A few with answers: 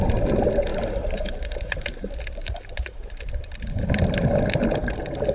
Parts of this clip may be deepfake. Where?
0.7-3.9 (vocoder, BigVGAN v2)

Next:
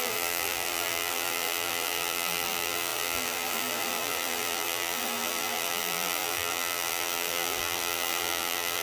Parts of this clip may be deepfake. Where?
0.0-8.8 (vocoder, BigVGAN v2)

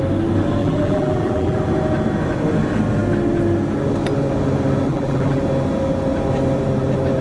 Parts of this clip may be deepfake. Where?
0.6-1.6 (vocoder, BigVGAN v2); 4.9-5.4

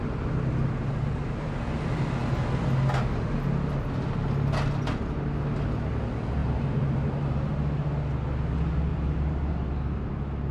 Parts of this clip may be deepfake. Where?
6.4-7.3 (vocoder, BigVGAN v2); 8.9-9.5

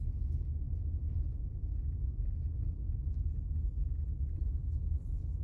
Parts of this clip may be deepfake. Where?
none

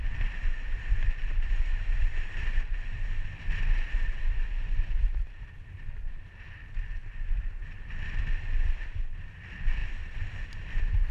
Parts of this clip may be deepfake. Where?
0.0-11.1 (vocoder, BigVGAN v2)

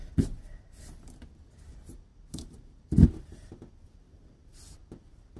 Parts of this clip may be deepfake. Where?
2.1-3.5 (vocoder, BigVGAN v2)